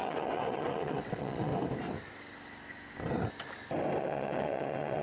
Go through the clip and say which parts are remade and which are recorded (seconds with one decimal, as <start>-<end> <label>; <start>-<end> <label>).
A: 0.0-1.5 remade; 1.5-4.0 recorded; 4.0-5.0 remade